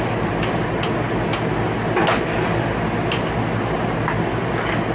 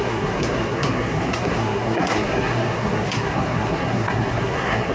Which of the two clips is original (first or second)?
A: first